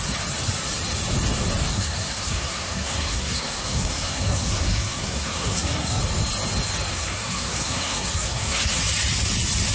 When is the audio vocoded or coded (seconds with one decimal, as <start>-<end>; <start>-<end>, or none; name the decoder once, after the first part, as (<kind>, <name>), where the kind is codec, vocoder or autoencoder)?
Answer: 1.7-6.0 (codec, SNAC); 6.9-8.7